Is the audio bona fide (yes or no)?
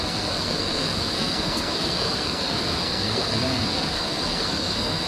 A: no